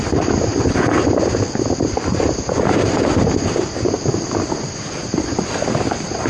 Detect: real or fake real